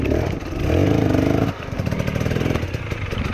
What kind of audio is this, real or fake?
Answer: real